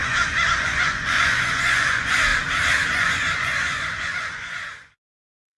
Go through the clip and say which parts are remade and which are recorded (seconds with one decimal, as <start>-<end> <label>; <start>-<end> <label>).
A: 0.0-2.3 remade; 2.3-2.9 recorded; 2.9-5.6 remade